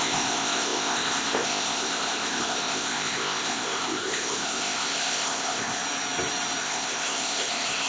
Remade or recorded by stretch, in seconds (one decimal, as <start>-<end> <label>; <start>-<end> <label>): 0.0-5.8 remade; 5.8-6.6 recorded; 6.6-7.9 remade